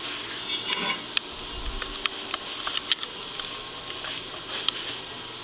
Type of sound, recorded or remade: recorded